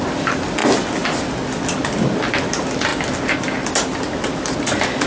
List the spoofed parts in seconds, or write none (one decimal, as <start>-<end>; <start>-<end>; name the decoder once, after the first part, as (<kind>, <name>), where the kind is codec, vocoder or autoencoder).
none